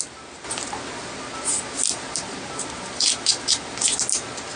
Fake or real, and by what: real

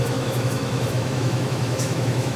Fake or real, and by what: fake, autoencoder, DAC-VAE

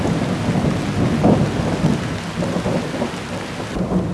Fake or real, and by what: real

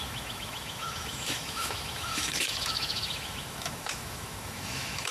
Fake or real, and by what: fake, autoencoder, DAC-VAE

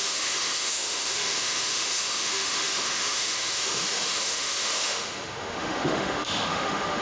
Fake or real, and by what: fake, autoencoder, DAC-VAE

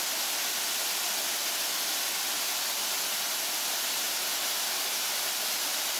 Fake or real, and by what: real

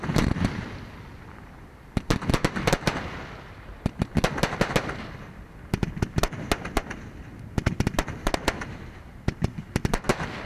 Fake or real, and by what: real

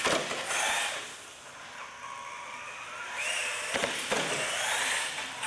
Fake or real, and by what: real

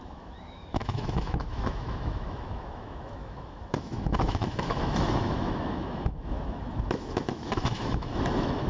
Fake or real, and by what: fake, autoencoder, DAC-VAE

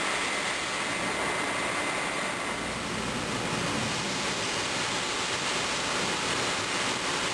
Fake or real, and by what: real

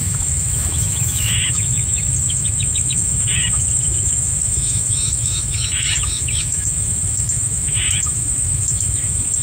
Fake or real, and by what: fake, autoencoder, DAC-VAE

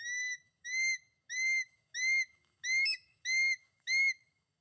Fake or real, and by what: fake, autoencoder, DAC-VAE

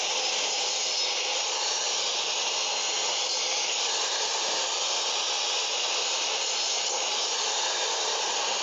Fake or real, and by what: real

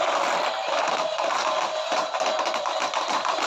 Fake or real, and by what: real